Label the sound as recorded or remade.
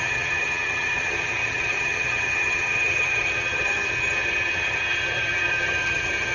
remade